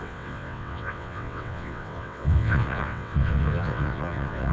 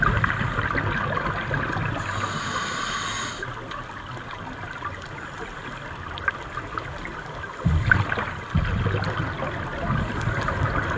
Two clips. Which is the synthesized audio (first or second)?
first